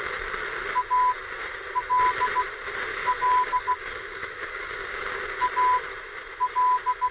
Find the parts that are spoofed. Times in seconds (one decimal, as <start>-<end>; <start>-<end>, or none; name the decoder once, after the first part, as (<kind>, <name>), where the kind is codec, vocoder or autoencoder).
2.9-5.0 (codec, DAC)